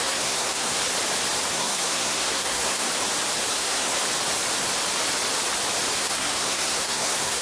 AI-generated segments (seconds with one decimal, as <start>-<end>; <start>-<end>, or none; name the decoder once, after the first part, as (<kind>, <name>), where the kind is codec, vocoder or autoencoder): 0.0-0.8 (codec, SNAC); 1.5-2.9; 3.5-3.9; 6.0-7.4